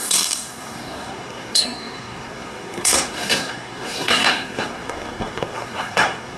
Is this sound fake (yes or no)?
yes